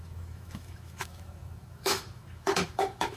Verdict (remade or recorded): remade